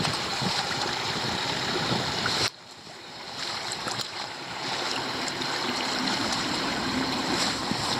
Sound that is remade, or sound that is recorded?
remade